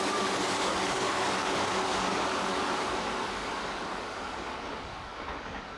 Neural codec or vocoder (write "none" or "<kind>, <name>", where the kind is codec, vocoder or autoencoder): codec, DAC